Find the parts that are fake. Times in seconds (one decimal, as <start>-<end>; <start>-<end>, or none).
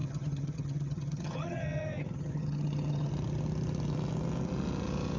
0.0-3.1